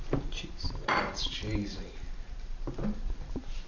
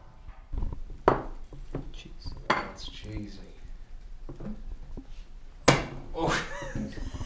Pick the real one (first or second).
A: second